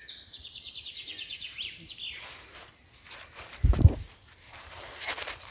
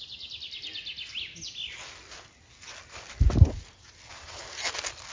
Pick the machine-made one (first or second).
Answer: first